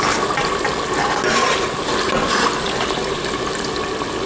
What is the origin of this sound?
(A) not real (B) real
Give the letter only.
B